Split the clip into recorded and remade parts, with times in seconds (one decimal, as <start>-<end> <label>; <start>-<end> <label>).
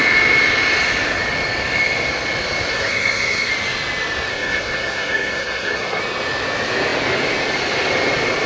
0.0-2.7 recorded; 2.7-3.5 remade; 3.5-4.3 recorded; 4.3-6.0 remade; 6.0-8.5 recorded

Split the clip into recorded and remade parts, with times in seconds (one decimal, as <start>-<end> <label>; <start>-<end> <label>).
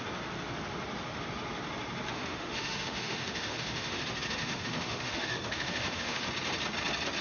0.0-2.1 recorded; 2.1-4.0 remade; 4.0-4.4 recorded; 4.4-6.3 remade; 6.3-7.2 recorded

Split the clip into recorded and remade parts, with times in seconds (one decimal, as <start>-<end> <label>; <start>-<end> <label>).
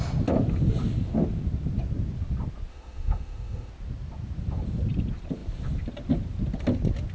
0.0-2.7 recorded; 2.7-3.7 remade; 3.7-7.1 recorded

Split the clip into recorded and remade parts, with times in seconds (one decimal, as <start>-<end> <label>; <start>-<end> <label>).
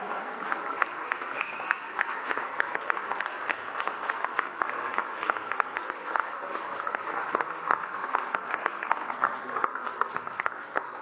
0.0-11.0 remade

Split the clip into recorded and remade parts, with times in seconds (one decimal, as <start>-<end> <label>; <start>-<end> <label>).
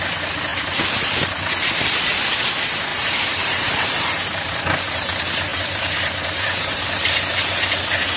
0.0-0.5 recorded; 0.5-2.4 remade; 2.4-2.9 recorded; 2.9-4.8 remade; 4.8-5.5 recorded; 5.5-7.1 remade; 7.1-8.2 recorded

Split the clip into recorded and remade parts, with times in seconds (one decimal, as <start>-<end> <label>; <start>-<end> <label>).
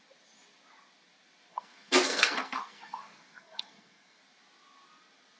0.0-1.5 recorded; 1.5-4.2 remade; 4.2-5.4 recorded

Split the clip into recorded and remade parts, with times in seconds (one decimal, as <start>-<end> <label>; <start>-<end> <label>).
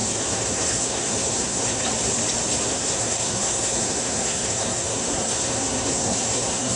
0.0-1.8 remade; 1.8-2.7 recorded; 2.7-6.8 remade